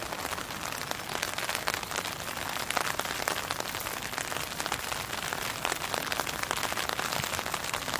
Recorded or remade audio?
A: recorded